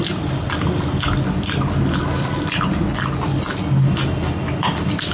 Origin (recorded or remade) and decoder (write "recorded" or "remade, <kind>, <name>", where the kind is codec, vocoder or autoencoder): recorded